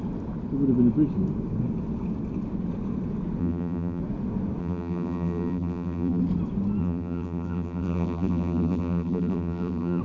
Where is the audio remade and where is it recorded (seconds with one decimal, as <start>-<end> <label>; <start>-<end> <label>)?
0.0-3.4 recorded; 3.4-4.0 remade; 4.0-4.6 recorded; 4.6-6.2 remade; 6.2-6.8 recorded; 6.8-10.0 remade

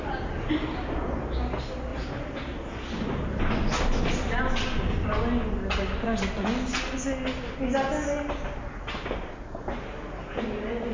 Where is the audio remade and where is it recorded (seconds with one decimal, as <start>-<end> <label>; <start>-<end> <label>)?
0.0-1.9 recorded; 1.9-4.4 remade; 4.4-10.9 recorded